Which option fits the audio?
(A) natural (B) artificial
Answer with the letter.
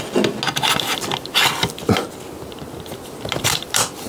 A